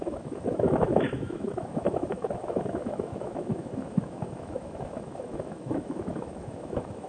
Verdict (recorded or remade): remade